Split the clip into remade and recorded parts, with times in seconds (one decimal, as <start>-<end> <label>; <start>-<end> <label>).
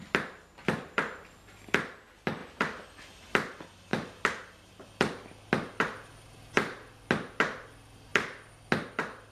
0.0-9.3 recorded